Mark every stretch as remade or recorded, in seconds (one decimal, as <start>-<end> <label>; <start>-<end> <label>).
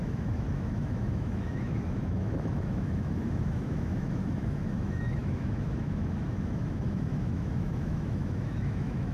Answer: 0.0-9.1 remade